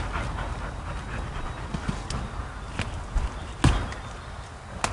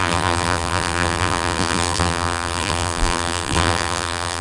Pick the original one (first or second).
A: first